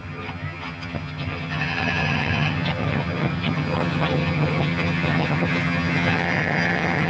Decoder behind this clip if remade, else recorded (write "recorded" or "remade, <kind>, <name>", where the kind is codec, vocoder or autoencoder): remade, vocoder, HiFi-GAN